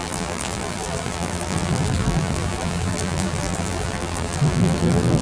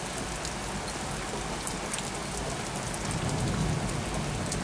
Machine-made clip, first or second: first